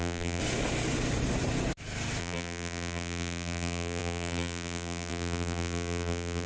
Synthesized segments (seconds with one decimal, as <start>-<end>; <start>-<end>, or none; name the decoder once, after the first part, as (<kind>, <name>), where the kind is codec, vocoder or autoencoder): 0.0-0.4 (vocoder, BigVGAN v2); 2.2-6.5